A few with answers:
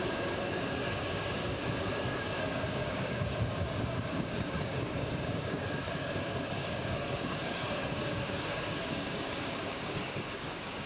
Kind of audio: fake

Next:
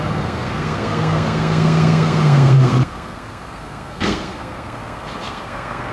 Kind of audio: fake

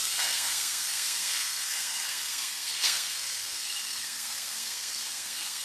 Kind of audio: fake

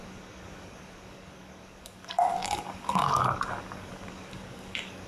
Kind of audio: fake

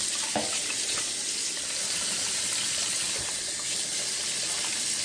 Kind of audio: real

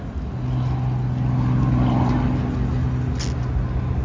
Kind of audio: real